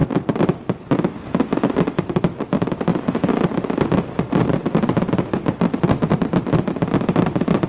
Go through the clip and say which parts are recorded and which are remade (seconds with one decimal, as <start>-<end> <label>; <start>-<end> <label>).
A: 0.0-7.7 recorded